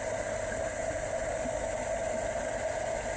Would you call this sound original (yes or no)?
yes